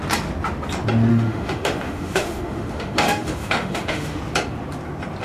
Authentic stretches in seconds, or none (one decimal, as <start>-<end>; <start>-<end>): 0.0-1.1; 4.2-5.2

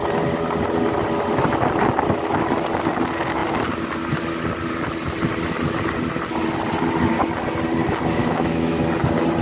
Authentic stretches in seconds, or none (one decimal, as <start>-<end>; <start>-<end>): 0.0-8.2; 8.8-9.4

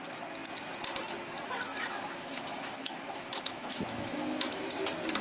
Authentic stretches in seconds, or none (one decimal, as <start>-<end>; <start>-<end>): 0.0-1.7; 4.8-5.2

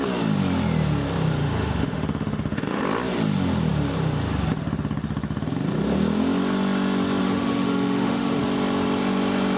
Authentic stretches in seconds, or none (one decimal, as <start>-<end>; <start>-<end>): 0.0-1.4; 2.8-7.2; 8.4-9.6

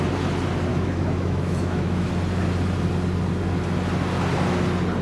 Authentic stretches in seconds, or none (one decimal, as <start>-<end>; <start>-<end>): 0.0-0.7; 2.1-5.0

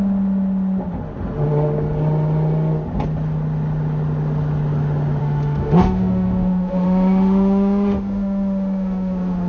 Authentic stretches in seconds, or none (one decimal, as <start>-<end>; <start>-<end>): 0.0-5.2

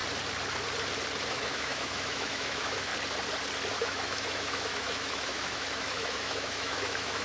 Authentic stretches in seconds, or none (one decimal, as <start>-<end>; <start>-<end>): 0.0-1.3; 2.9-3.7

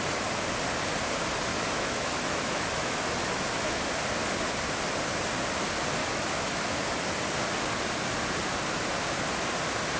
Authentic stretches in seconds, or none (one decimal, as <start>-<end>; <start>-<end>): 0.0-1.5; 3.8-6.0; 6.7-10.0